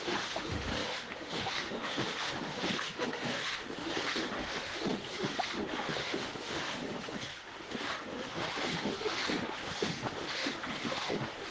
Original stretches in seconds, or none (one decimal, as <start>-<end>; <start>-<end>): none

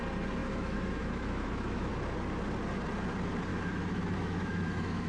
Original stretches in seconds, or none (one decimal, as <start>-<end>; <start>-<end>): 0.0-0.4; 1.9-3.5

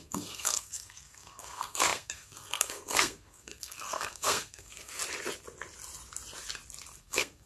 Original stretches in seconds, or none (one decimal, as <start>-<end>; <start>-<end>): 5.0-7.0

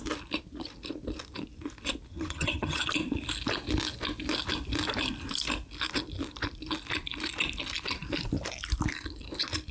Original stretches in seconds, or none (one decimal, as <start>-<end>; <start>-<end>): 0.0-2.1; 2.8-9.7